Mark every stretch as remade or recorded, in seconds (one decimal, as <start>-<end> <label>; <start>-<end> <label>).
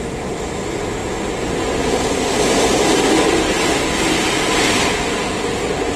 0.0-6.0 recorded